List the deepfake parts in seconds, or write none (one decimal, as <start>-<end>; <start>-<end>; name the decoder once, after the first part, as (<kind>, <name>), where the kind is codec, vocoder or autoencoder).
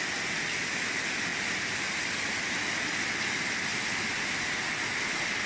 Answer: none